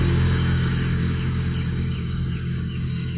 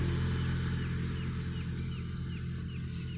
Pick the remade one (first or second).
first